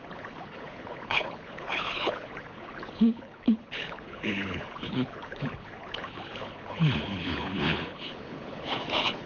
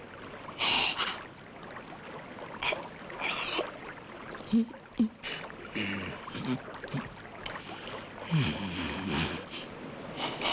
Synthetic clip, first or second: first